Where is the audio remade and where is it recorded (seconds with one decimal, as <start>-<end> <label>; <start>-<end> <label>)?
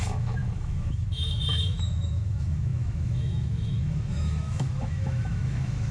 0.0-5.9 remade